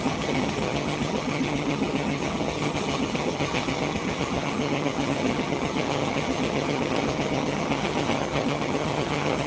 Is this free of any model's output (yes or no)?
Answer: no